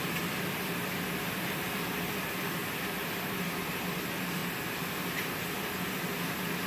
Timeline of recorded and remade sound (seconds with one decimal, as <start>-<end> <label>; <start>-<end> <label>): 0.0-6.7 remade